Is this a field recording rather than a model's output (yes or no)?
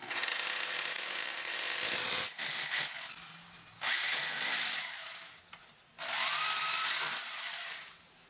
yes